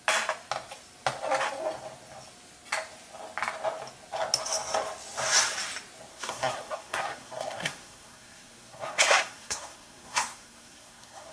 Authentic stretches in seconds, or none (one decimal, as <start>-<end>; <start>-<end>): 0.0-6.1